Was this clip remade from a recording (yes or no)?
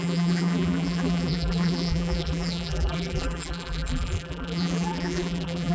yes